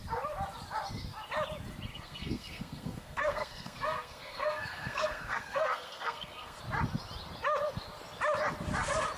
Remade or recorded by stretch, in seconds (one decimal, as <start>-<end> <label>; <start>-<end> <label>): 0.0-1.9 recorded; 1.9-6.6 remade; 6.6-9.2 recorded

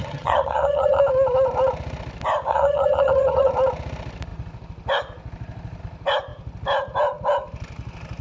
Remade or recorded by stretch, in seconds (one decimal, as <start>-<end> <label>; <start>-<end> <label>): 0.0-1.0 remade; 1.0-2.5 recorded; 2.5-3.5 remade; 3.5-8.2 recorded

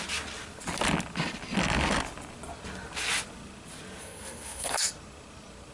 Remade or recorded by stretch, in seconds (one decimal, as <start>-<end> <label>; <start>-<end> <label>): 0.0-4.0 recorded; 4.0-4.9 remade; 4.9-5.7 recorded

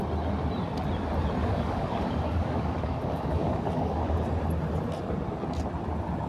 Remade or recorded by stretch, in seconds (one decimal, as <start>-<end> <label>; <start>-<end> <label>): 0.0-1.4 recorded; 1.4-4.0 remade; 4.0-6.3 recorded

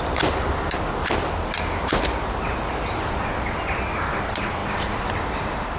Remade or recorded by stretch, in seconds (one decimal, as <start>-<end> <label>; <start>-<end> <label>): 0.0-4.6 recorded; 4.6-5.8 remade